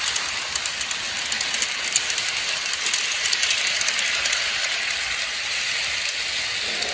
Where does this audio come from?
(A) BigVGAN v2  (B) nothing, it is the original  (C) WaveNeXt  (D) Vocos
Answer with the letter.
B